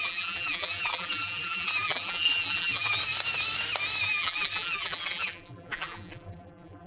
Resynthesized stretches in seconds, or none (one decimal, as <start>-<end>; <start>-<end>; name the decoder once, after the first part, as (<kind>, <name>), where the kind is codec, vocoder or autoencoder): 0.0-3.0 (vocoder, BigVGAN v2); 4.0-6.9